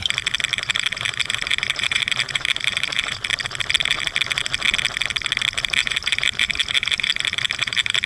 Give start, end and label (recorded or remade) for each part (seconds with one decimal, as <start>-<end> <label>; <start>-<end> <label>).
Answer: 0.0-0.5 recorded; 0.5-3.3 remade; 3.3-5.8 recorded; 5.8-8.1 remade